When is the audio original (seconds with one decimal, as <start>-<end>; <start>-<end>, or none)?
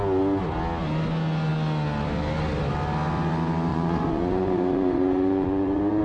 0.0-3.7